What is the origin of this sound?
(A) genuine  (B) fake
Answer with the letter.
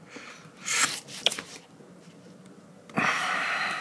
A